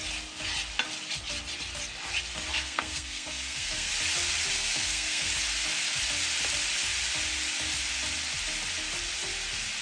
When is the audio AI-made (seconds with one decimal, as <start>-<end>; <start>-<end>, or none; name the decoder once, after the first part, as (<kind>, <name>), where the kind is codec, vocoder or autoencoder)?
2.5-3.9 (codec, SNAC); 4.5-5.3